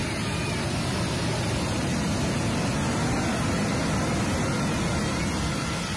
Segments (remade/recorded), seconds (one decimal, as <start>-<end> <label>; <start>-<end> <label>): 0.0-6.0 recorded